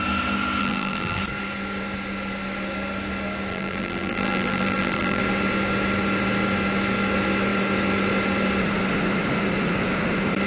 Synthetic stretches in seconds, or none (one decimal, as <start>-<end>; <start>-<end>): 0.6-1.2; 3.5-5.2